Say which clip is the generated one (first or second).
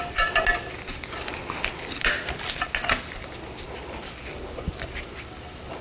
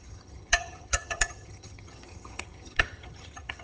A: second